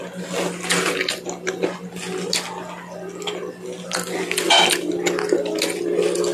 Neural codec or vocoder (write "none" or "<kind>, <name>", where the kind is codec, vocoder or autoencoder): none